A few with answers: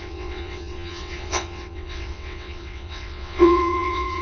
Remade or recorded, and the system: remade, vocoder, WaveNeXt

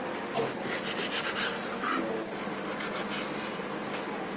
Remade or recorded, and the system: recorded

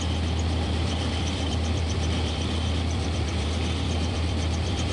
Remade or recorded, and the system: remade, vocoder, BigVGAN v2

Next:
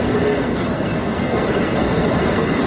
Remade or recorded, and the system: remade, codec, SNAC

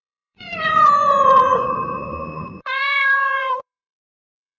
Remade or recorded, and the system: remade, vocoder, Vocos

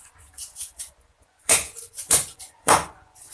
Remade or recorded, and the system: remade, vocoder, Vocos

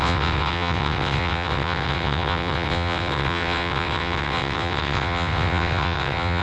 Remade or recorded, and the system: remade, vocoder, WaveNeXt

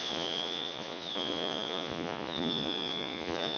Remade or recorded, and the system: remade, vocoder, Vocos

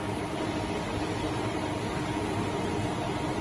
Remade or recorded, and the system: recorded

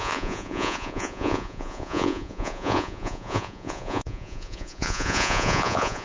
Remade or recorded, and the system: remade, vocoder, Vocos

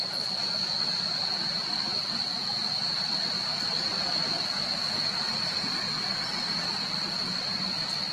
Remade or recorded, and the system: recorded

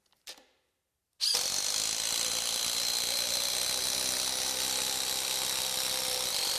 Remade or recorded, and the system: recorded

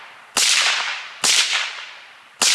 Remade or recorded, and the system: recorded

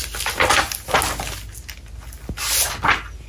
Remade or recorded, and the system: recorded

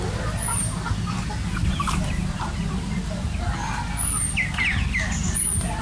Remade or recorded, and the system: recorded